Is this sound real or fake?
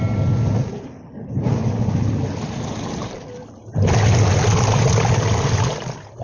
real